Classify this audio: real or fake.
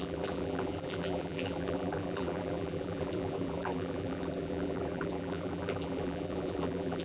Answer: fake